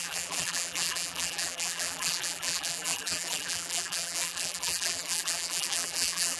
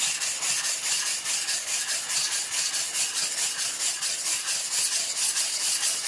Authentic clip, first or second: second